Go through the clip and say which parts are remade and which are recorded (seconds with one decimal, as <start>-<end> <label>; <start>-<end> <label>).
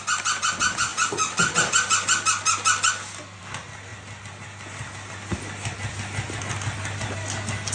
0.0-7.7 recorded